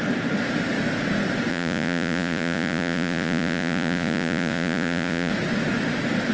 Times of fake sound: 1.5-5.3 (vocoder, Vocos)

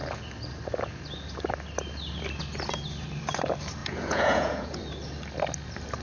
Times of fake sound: 3.8-4.8 (vocoder, Vocos)

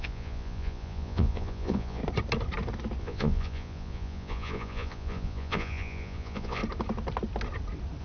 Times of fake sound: 0.0-2.0 (vocoder, Vocos); 3.0-6.6

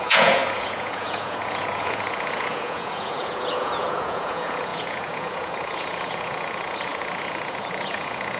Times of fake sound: 0.0-8.4 (vocoder, Vocos)

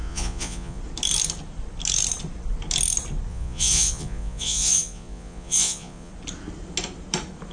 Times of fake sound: 0.0-0.8 (vocoder, Vocos); 3.3-6.1

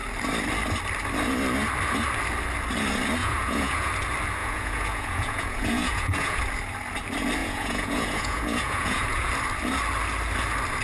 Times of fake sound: 3.2-3.9 (vocoder, Vocos); 4.4-6.4; 7.4-9.3

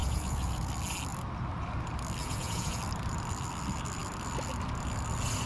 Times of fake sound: 0.0-0.7 (vocoder, Vocos); 2.2-2.8